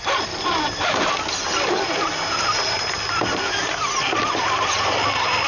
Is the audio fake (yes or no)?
no